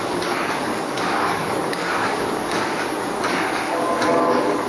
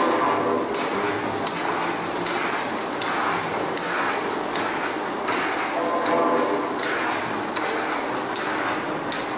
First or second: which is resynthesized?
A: first